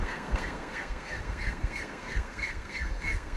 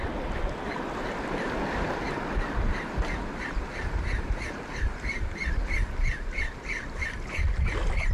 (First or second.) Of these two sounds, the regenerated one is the first